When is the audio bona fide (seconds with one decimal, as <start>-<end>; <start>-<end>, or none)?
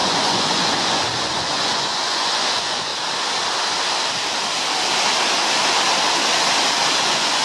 2.9-7.0